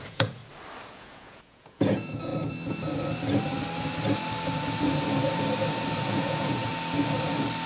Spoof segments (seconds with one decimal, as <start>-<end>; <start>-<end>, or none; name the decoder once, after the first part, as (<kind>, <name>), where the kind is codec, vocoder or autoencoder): 0.0-0.4 (vocoder, Vocos); 0.9-2.3; 6.1-6.7